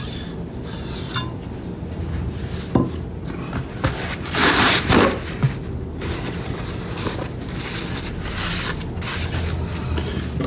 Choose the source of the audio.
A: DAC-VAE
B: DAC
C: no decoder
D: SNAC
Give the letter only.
C